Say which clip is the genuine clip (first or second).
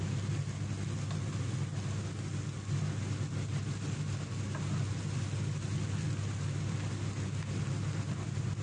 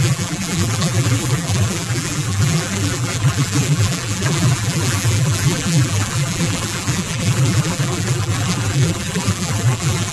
first